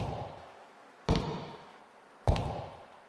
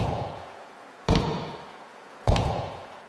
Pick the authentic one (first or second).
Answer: first